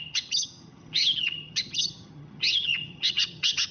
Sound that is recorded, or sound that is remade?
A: remade